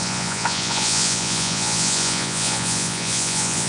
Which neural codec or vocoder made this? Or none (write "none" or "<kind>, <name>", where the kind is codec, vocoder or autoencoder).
vocoder, Vocos